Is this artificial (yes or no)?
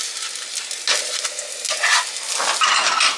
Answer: no